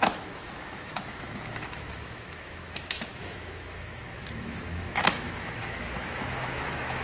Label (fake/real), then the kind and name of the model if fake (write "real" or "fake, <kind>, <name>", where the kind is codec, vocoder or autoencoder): fake, autoencoder, DAC-VAE